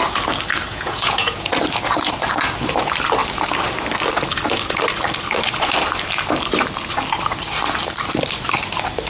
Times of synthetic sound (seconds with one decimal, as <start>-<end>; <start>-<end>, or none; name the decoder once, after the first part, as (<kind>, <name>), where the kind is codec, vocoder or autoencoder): 0.7-1.5 (vocoder, Vocos)